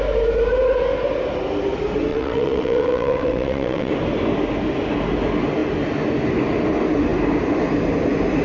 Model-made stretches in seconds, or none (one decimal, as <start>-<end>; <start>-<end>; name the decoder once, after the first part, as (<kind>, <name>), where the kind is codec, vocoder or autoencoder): 2.1-3.9 (vocoder, WaveNeXt)